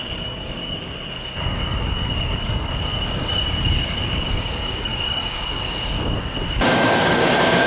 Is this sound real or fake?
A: fake